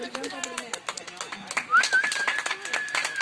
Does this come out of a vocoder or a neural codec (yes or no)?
no